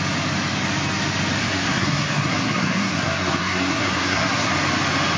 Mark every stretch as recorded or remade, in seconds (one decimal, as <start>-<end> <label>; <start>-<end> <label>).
0.0-1.4 recorded; 1.4-4.5 remade; 4.5-5.2 recorded